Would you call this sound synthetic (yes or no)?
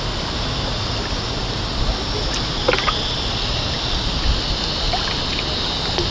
no